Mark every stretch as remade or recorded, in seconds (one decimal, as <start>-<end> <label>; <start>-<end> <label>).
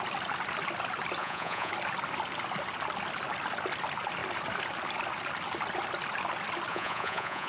0.0-1.2 recorded; 1.2-1.7 remade; 1.7-6.7 recorded; 6.7-7.5 remade